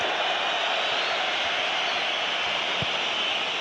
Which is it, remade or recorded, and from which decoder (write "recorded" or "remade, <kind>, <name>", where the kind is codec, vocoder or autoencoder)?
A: recorded